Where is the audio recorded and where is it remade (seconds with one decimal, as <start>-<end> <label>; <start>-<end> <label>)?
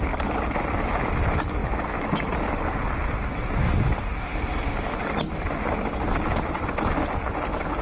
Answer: 0.0-1.6 recorded; 1.6-2.3 remade; 2.3-7.8 recorded